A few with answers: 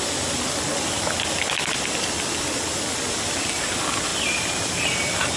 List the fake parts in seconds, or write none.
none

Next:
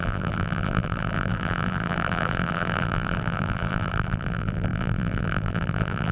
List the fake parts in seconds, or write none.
0.0-6.1 (vocoder, BigVGAN v2)

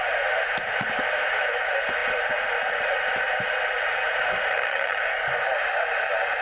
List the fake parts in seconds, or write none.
4.5-5.0 (vocoder, HiFi-GAN)

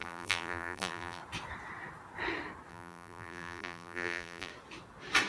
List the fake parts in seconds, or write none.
0.0-1.2 (vocoder, BigVGAN v2); 2.7-4.5

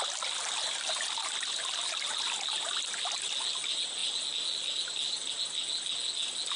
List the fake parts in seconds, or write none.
none

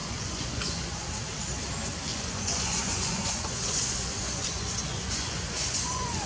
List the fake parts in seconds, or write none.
0.0-1.1 (vocoder, Vocos); 2.1-6.3

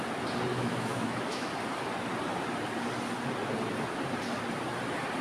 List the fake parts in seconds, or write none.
0.5-1.5 (autoencoder, DAC-VAE)

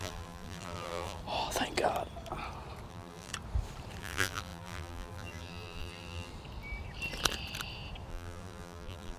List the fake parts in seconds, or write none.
0.0-1.2 (vocoder, BigVGAN v2); 2.9-3.3; 4.0-6.3; 8.1-9.2